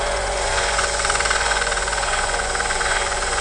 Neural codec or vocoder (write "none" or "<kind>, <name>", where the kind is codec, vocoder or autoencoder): vocoder, Vocos